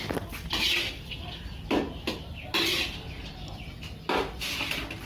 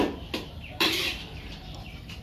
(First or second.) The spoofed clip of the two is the second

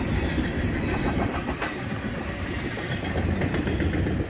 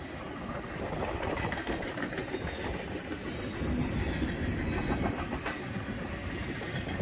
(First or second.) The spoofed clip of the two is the first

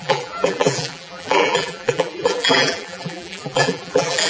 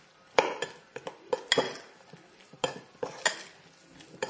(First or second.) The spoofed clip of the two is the first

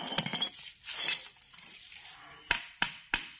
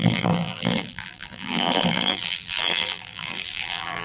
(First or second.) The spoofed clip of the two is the second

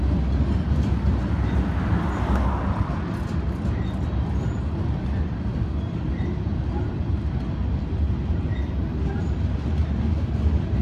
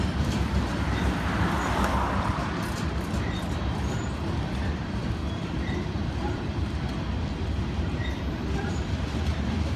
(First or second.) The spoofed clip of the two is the second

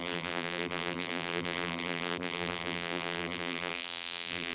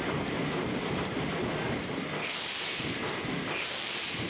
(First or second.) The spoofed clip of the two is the first